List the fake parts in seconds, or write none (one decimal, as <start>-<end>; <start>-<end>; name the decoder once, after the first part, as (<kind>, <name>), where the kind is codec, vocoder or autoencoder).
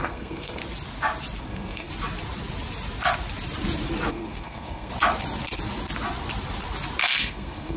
0.0-0.6 (codec, SNAC); 1.4-1.9; 4.1-4.9; 7.0-7.8